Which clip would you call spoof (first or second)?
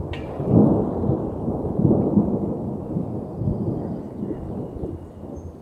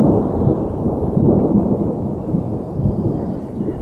second